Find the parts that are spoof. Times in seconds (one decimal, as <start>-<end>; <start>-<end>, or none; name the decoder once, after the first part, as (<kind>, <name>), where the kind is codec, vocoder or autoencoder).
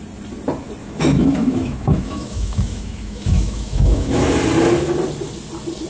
0.8-4.3 (autoencoder, DAC-VAE)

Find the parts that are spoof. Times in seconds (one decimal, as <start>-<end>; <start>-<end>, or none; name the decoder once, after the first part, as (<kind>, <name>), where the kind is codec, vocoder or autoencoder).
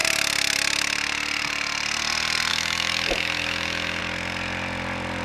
2.5-4.0 (autoencoder, DAC-VAE)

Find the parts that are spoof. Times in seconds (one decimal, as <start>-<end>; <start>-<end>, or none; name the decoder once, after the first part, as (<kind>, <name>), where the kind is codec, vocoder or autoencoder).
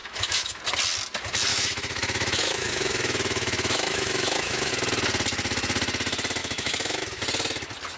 0.0-0.6 (autoencoder, DAC-VAE); 1.5-4.7; 6.4-7.2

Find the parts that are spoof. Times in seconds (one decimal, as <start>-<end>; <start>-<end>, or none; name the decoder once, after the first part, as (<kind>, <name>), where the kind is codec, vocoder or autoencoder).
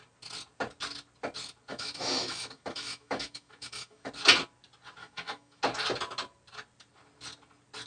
1.7-4.1 (autoencoder, DAC-VAE); 5.0-5.6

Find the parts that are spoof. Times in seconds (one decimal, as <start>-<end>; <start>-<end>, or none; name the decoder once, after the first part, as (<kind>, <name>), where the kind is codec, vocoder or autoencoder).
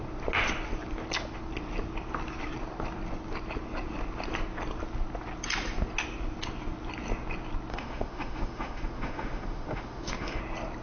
7.7-10.4 (autoencoder, DAC-VAE)